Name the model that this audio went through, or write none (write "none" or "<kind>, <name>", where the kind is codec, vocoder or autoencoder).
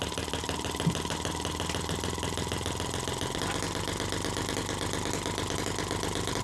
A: none